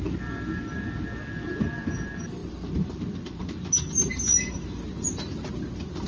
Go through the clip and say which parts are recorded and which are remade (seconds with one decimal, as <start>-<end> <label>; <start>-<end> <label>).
0.0-6.1 recorded